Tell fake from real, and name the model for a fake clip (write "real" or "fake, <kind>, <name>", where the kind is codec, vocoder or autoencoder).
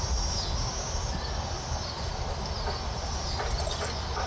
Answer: real